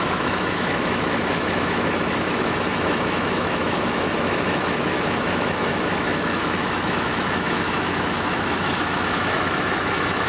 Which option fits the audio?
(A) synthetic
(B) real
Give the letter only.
A